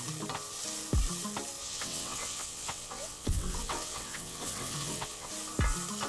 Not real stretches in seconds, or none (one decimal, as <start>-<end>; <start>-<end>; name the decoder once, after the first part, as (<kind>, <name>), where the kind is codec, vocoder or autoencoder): 1.6-5.3 (vocoder, WaveNeXt)